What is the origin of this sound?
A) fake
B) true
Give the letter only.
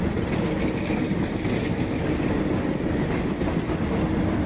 B